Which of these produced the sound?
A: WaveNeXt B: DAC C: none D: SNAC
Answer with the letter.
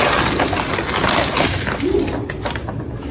C